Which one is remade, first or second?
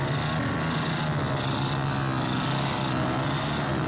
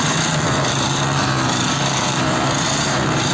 second